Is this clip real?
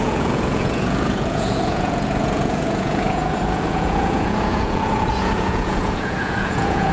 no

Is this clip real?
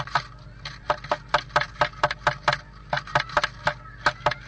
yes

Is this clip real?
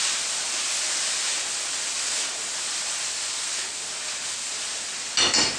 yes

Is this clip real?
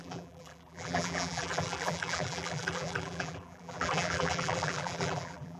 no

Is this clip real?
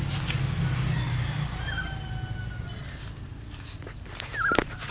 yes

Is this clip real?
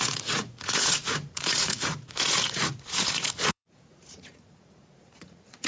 no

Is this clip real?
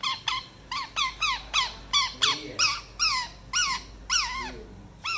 yes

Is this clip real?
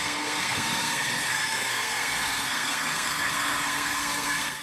no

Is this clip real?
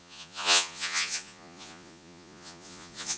no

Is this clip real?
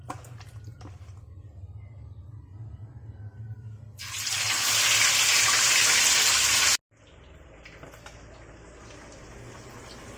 yes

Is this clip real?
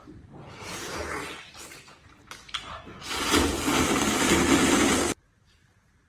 yes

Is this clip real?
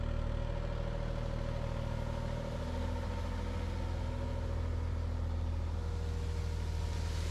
yes